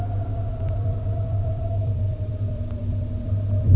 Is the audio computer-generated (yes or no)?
yes